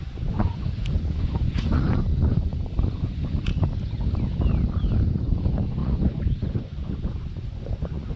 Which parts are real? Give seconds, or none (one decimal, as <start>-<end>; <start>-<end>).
3.5-5.1